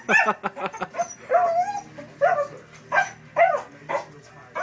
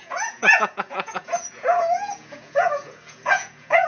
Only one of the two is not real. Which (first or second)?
second